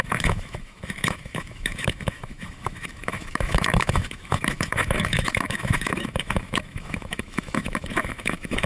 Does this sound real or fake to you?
fake